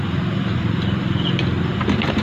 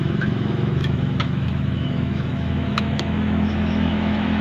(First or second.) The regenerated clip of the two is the second